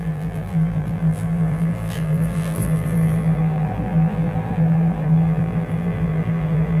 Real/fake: fake